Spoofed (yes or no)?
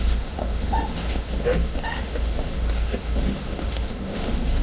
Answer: yes